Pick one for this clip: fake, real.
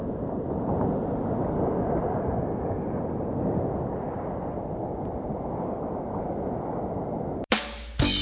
real